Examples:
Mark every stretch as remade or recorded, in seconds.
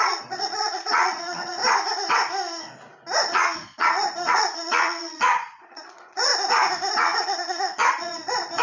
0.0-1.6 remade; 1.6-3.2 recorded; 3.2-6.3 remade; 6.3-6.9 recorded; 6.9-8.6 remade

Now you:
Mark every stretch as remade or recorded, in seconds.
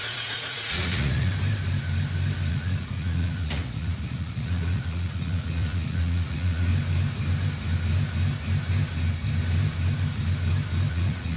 0.0-1.3 remade; 1.3-2.5 recorded; 2.5-6.7 remade; 6.7-10.9 recorded; 10.9-11.4 remade